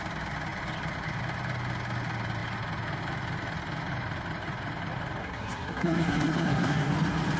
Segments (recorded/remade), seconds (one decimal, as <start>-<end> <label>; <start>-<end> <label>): 0.0-5.2 recorded; 5.2-6.9 remade; 6.9-7.4 recorded

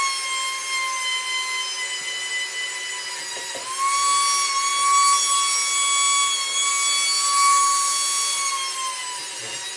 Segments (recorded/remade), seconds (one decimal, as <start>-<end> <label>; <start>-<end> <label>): 0.0-9.8 recorded

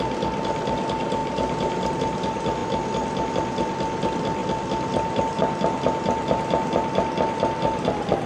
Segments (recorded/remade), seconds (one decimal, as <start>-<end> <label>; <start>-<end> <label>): 0.0-8.3 recorded

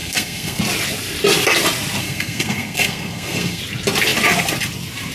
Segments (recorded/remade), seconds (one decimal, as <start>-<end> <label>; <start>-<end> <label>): 0.0-0.6 remade; 0.6-2.0 recorded; 2.0-3.6 remade; 3.6-5.1 recorded

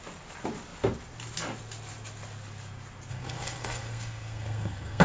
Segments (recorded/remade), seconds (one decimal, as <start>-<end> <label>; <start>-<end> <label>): 0.0-3.1 recorded; 3.1-5.0 remade

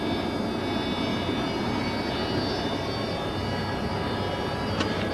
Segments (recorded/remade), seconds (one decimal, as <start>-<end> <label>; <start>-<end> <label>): 0.0-5.1 recorded

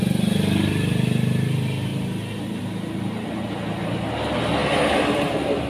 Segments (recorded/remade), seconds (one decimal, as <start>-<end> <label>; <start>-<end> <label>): 0.0-5.7 recorded

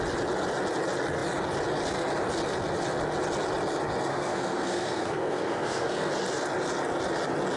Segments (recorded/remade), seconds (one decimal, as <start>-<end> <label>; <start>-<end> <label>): 0.0-4.1 recorded; 4.1-6.1 remade; 6.1-7.6 recorded